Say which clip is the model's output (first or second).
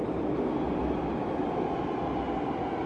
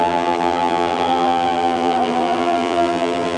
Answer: second